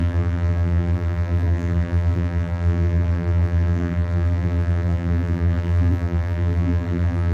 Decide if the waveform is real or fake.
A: fake